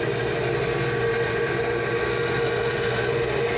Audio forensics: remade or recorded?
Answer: recorded